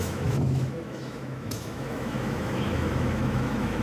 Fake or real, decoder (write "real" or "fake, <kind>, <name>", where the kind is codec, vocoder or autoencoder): fake, autoencoder, DAC-VAE